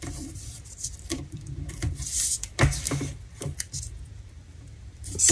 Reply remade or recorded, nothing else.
remade